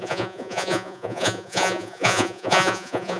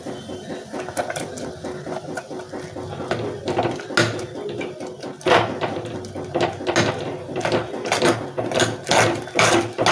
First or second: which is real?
second